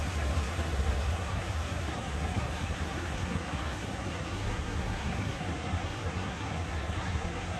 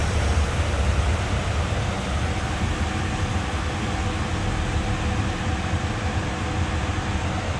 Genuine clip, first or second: second